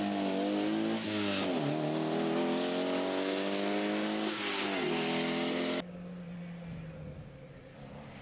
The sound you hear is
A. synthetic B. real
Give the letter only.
B